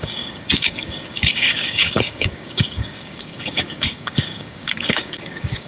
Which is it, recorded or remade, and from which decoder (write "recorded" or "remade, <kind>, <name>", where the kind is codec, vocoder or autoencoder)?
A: remade, codec, DAC